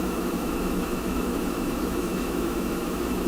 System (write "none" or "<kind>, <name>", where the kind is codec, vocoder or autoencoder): autoencoder, DAC-VAE